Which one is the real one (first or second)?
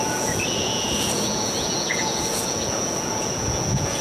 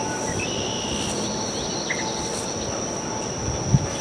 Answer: second